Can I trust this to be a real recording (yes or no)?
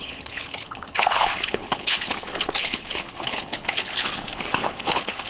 no